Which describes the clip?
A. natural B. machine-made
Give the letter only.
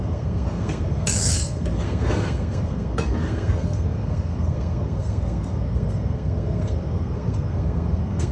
B